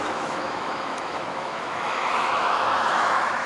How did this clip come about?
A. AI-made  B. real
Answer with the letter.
A